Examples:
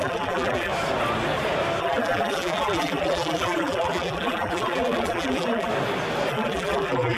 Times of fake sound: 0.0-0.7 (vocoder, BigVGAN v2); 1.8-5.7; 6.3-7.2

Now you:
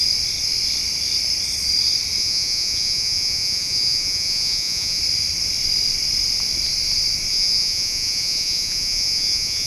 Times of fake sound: 2.2-5.0 (vocoder, Vocos); 7.3-9.7